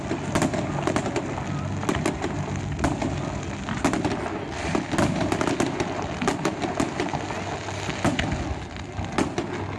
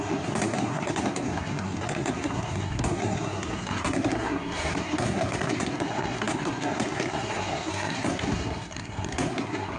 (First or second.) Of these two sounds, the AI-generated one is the second